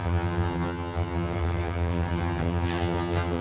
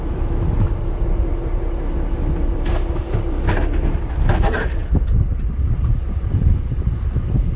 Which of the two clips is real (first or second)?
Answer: second